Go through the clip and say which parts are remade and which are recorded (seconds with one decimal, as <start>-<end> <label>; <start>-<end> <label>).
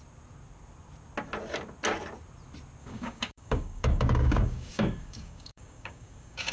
0.0-2.8 recorded; 2.8-6.5 remade